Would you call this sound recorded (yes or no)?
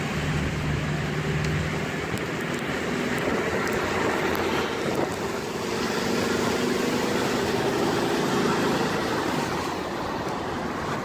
yes